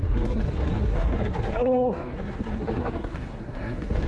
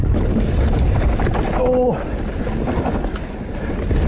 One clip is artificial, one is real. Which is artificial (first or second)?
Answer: first